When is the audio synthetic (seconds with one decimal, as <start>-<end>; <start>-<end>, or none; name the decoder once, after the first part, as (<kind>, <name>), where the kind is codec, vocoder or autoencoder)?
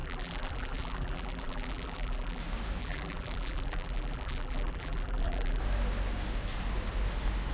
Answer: 0.0-2.4 (vocoder, BigVGAN v2); 2.8-5.6